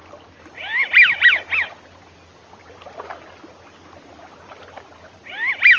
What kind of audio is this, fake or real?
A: real